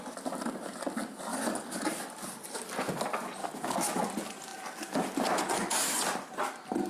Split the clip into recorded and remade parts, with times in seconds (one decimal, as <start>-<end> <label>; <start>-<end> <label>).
0.0-1.3 recorded; 1.3-2.0 remade; 2.0-3.4 recorded; 3.4-4.0 remade; 4.0-6.9 recorded